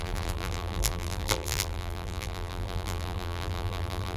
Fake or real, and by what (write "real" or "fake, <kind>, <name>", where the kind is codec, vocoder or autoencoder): fake, vocoder, BigVGAN v2